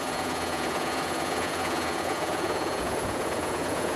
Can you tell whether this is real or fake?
fake